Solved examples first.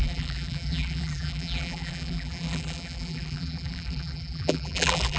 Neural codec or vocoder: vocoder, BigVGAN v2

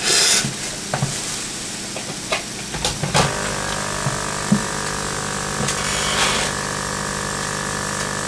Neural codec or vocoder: none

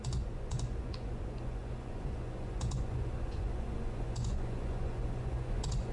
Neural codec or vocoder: vocoder, Vocos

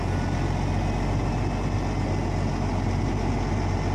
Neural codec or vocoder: none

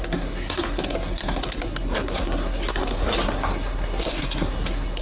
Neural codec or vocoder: codec, SNAC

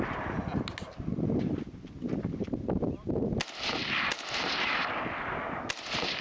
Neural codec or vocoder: none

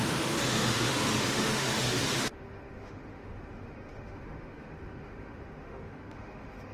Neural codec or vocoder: autoencoder, DAC-VAE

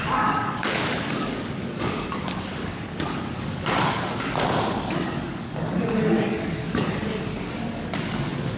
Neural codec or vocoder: codec, DAC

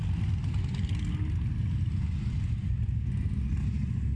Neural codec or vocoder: none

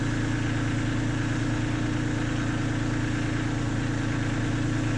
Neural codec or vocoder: none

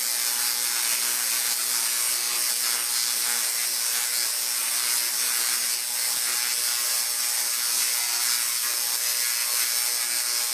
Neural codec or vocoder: none